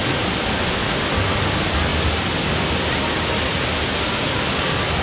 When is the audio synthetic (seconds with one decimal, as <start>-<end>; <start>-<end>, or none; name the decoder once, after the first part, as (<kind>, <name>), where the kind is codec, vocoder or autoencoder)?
none